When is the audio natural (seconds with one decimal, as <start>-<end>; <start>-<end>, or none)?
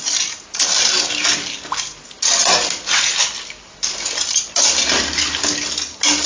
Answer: 0.0-2.4; 5.3-6.3